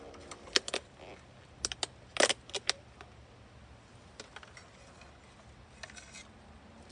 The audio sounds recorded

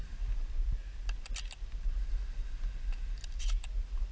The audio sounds recorded